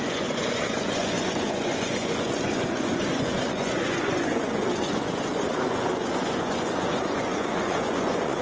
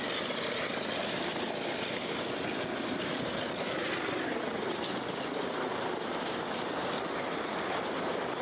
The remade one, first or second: first